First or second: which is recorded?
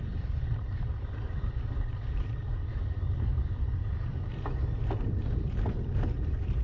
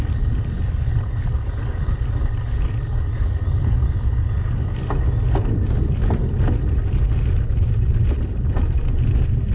second